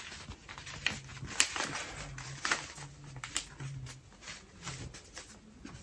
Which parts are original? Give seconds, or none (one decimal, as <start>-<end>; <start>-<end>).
0.0-5.8